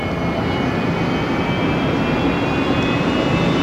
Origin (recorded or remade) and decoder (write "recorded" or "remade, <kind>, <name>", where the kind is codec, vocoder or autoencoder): recorded